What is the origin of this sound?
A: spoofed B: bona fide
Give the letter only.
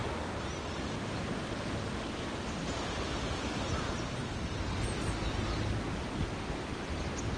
B